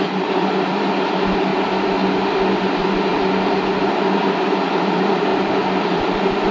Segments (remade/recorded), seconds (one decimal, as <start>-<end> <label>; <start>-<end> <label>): 0.0-1.5 remade; 1.5-2.7 recorded; 2.7-3.1 remade; 3.1-3.9 recorded; 3.9-5.3 remade; 5.3-5.8 recorded; 5.8-6.5 remade